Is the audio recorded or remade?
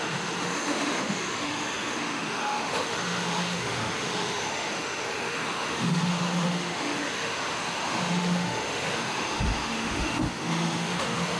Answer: remade